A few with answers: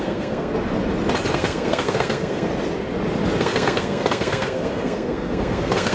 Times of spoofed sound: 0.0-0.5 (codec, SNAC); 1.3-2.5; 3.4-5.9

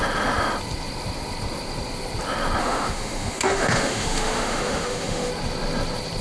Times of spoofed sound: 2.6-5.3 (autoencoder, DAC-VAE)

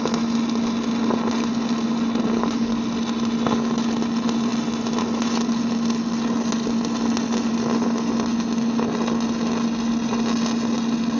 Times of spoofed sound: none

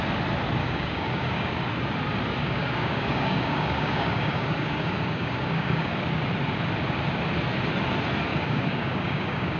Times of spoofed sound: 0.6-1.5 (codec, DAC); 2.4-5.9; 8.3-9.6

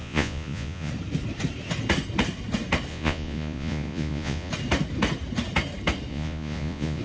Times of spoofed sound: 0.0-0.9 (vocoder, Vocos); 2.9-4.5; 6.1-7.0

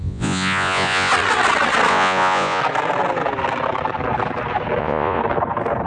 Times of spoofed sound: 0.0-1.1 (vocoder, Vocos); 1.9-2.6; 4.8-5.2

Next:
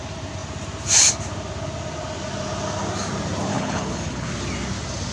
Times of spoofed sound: 3.5-4.3 (codec, HILCodec)